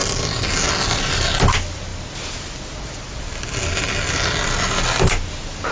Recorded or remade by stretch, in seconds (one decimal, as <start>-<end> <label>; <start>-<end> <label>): 0.0-5.7 recorded